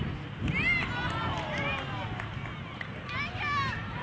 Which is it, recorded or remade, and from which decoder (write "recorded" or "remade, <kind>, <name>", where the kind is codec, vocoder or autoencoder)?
recorded